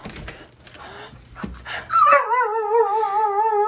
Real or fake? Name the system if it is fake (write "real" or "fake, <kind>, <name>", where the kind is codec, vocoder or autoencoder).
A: real